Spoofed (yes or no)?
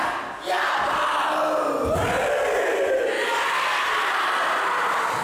no